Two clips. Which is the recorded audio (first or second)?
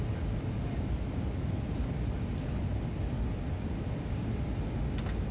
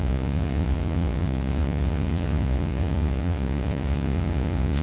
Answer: first